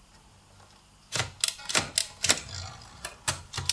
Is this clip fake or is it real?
real